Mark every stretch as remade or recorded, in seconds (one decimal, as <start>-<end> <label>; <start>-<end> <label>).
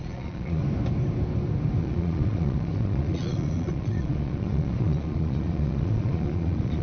0.0-0.6 remade; 0.6-1.8 recorded; 1.8-6.8 remade